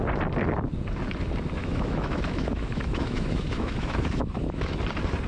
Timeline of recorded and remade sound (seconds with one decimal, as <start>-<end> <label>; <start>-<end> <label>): 0.0-1.6 recorded; 1.6-4.8 remade; 4.8-5.3 recorded